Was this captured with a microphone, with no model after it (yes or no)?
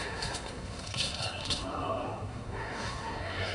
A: no